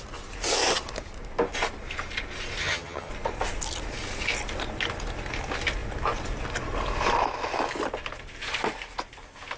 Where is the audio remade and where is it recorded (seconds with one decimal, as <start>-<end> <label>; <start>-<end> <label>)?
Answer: 0.0-2.6 recorded; 2.6-3.1 remade; 3.1-9.6 recorded